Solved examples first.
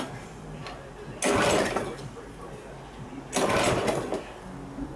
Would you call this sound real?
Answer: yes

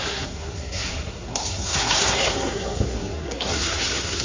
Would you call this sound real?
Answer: no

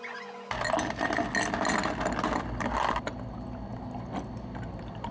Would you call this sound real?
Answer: yes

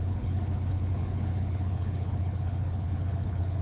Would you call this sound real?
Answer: no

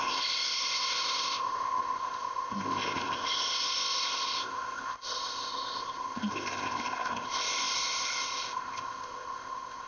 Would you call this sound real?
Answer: no